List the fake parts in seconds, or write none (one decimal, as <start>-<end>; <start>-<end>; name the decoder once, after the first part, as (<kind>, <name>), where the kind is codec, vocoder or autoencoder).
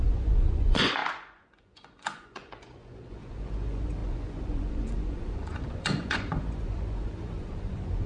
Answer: 0.0-8.1 (vocoder, Vocos)